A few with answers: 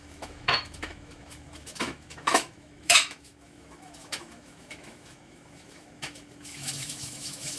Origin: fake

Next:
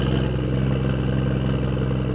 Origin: real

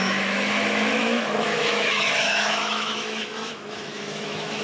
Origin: fake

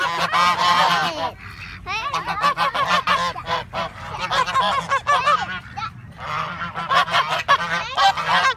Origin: real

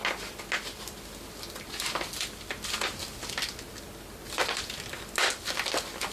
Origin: real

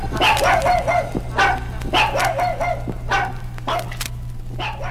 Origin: real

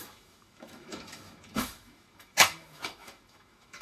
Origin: fake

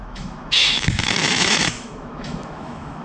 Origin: fake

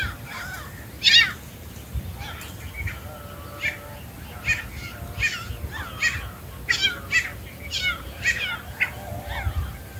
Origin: real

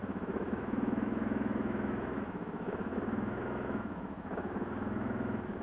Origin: fake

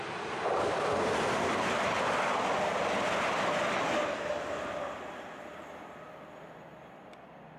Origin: real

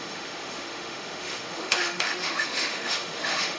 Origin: fake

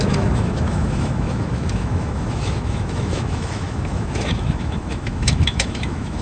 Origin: fake